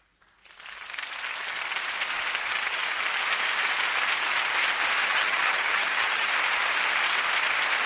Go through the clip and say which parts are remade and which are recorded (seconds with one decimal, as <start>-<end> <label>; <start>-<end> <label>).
0.0-5.0 recorded; 5.0-6.3 remade; 6.3-7.9 recorded

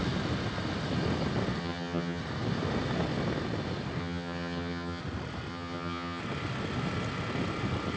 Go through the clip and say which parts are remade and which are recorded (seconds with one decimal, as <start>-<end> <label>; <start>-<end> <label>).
0.0-1.6 recorded; 1.6-2.2 remade; 2.2-4.0 recorded; 4.0-5.0 remade; 5.0-5.5 recorded; 5.5-6.2 remade; 6.2-8.0 recorded

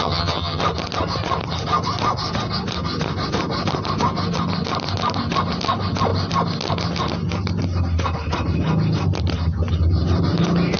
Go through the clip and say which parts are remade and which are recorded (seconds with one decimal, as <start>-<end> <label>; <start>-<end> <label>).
0.0-0.6 remade; 0.6-10.8 recorded

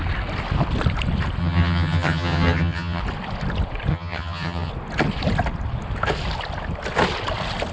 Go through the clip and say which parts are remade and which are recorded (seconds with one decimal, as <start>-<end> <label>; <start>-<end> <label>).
0.0-1.4 recorded; 1.4-3.0 remade; 3.0-3.9 recorded; 3.9-4.7 remade; 4.7-7.7 recorded

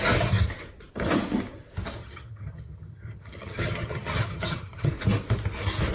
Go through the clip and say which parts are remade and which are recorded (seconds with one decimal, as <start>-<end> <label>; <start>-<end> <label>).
0.0-2.0 recorded; 2.0-4.9 remade; 4.9-5.9 recorded

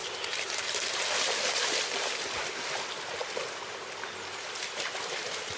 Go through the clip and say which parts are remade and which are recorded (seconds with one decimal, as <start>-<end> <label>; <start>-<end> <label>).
0.0-5.6 recorded

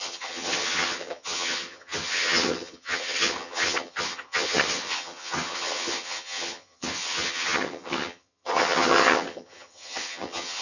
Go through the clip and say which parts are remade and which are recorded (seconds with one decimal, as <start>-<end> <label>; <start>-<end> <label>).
0.0-10.6 remade